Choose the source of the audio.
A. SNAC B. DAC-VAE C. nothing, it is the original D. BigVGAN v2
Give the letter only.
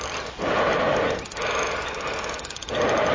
C